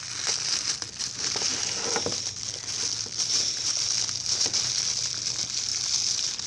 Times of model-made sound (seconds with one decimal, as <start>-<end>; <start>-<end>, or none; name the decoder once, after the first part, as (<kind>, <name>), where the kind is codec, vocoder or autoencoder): none